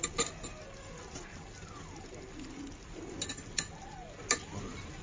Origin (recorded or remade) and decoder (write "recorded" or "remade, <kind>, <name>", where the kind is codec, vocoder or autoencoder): recorded